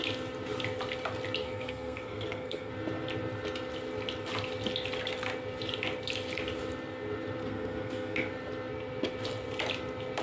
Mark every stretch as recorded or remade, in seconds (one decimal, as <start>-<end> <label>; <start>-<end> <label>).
0.0-1.4 recorded; 1.4-2.7 remade; 2.7-7.4 recorded; 7.4-8.3 remade; 8.3-10.2 recorded